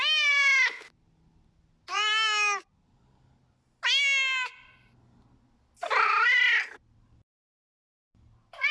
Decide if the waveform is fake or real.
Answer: real